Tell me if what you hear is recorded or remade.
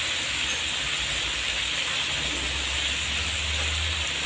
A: recorded